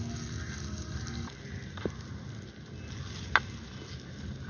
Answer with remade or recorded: recorded